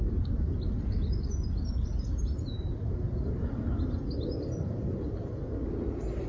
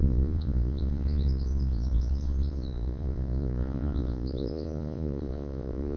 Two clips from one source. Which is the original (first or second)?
first